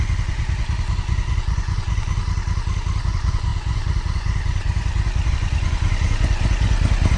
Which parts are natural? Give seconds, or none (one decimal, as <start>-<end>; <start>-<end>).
2.2-3.0